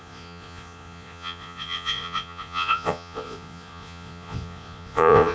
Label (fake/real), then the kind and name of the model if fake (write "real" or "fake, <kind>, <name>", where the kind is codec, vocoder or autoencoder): fake, vocoder, Vocos